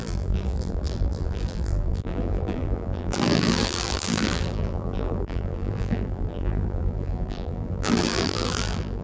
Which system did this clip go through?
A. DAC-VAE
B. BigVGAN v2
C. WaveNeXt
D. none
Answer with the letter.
B